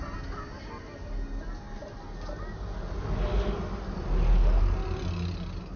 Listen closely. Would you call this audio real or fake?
real